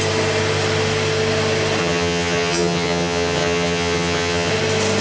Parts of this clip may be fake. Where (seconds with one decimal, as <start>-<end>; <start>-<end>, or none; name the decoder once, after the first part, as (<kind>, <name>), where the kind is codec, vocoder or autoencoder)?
1.8-4.5 (vocoder, HiFi-GAN)

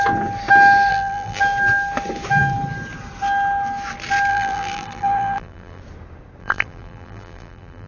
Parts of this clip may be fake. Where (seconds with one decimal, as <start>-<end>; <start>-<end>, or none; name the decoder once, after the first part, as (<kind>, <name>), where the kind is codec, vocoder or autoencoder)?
0.9-1.4 (vocoder, BigVGAN v2); 4.3-5.8; 6.4-7.9

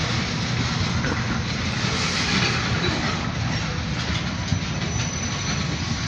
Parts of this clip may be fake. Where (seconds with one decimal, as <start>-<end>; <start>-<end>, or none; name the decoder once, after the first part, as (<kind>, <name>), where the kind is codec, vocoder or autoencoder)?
none

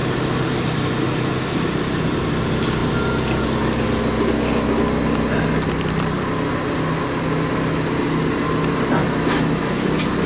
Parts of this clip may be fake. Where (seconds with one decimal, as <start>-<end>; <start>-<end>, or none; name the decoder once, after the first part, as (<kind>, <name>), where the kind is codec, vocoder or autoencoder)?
none

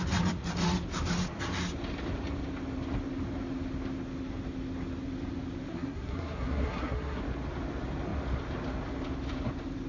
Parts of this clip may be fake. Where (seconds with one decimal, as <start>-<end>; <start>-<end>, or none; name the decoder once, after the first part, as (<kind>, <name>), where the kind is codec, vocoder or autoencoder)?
5.7-7.2 (codec, SNAC)

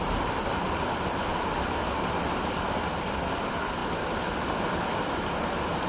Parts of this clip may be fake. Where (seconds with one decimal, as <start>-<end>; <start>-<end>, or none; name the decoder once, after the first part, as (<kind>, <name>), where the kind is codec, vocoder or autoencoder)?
none